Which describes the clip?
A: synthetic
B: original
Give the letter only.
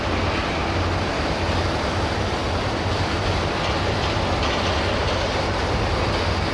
B